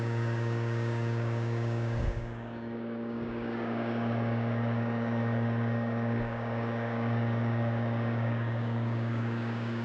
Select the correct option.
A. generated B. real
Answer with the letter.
A